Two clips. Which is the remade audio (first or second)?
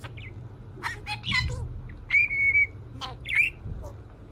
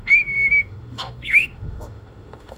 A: second